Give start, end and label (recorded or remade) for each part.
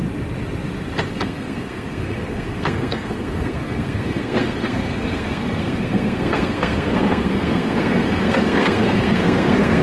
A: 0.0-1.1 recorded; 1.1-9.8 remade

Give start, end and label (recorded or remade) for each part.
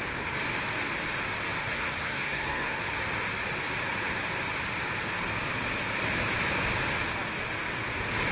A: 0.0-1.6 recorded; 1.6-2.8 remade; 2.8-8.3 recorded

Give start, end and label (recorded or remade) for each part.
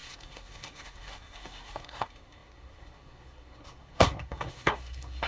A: 0.0-5.3 remade